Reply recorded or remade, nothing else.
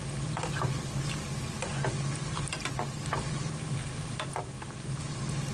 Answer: recorded